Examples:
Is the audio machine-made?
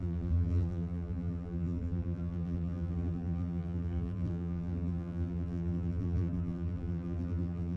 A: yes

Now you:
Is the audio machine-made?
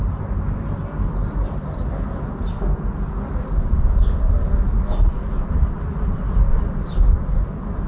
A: no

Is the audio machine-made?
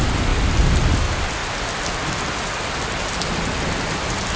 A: no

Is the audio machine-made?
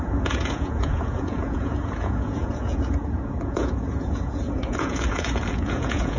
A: yes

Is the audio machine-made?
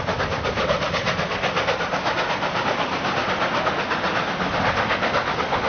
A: no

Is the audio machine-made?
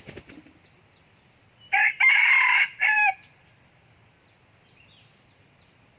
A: yes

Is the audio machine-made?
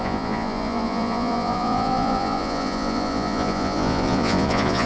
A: yes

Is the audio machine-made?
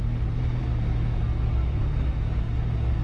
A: no